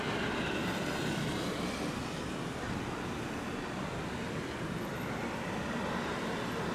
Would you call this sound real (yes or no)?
yes